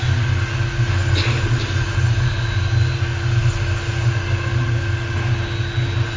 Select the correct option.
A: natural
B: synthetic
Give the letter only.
A